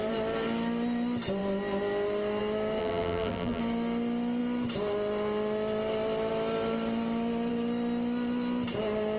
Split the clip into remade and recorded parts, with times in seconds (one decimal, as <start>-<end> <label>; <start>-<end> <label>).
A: 0.0-2.8 recorded; 2.8-3.6 remade; 3.6-9.2 recorded

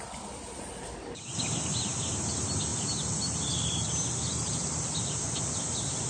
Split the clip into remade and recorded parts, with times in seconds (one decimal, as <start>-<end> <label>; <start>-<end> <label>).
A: 0.0-6.1 recorded